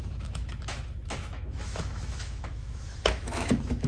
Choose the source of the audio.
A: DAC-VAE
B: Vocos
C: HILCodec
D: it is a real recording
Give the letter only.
A